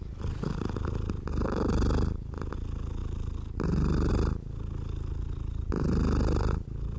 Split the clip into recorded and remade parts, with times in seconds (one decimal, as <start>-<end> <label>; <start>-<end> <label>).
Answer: 0.0-7.0 recorded